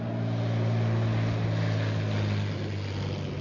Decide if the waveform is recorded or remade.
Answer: recorded